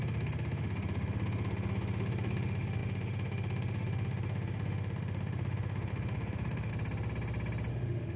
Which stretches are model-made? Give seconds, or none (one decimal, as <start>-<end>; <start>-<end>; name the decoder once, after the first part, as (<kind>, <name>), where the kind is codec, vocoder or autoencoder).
0.0-6.7 (autoencoder, DAC-VAE); 7.7-8.2